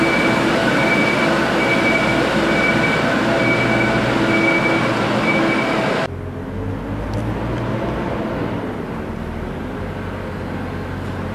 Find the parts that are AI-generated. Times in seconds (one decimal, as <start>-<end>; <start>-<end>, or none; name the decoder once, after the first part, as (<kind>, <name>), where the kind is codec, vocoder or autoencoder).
none